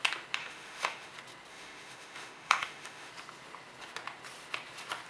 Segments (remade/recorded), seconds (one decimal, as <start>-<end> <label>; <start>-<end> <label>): 0.0-0.4 recorded; 0.4-1.1 remade; 1.1-1.5 recorded; 1.5-3.1 remade; 3.1-5.1 recorded